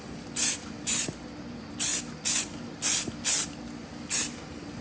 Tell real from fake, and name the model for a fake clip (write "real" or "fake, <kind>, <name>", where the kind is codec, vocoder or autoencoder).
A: real